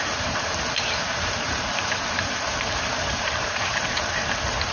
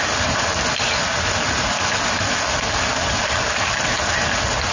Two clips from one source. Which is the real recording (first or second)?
second